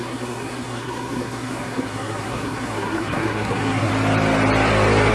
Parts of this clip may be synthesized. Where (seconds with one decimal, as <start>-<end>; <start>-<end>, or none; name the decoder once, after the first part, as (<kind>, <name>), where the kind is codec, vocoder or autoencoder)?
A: 0.0-3.9 (codec, SNAC)